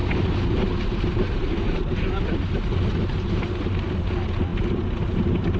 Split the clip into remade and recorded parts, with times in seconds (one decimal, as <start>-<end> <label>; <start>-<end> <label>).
0.0-5.6 recorded